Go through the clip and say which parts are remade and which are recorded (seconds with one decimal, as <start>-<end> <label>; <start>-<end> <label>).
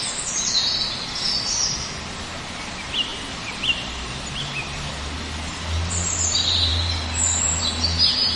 0.0-3.1 recorded; 3.1-4.9 remade; 4.9-8.4 recorded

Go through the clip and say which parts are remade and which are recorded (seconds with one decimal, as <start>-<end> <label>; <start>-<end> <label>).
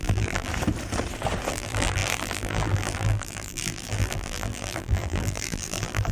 0.0-0.5 remade; 0.5-1.5 recorded; 1.5-6.1 remade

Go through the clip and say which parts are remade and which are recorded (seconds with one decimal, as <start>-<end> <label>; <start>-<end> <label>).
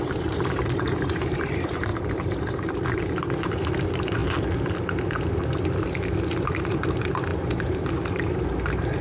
0.0-1.9 remade; 1.9-3.4 recorded; 3.4-4.2 remade; 4.2-6.5 recorded; 6.5-9.0 remade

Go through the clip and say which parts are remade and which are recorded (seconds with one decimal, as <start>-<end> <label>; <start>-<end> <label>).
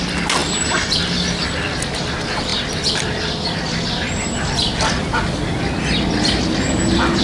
0.0-2.5 recorded; 2.5-5.2 remade; 5.2-7.2 recorded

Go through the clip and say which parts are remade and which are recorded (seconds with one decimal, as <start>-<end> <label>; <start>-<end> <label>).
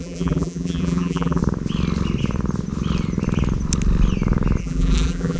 0.0-1.4 remade; 1.4-4.6 recorded; 4.6-5.4 remade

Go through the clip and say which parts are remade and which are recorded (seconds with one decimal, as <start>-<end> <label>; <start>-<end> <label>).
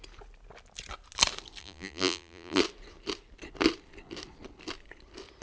0.0-1.6 recorded; 1.6-2.6 remade; 2.6-5.4 recorded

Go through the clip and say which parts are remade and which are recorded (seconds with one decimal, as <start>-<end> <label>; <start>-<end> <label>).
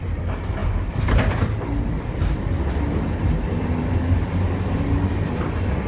0.0-0.6 recorded; 0.6-4.1 remade; 4.1-5.9 recorded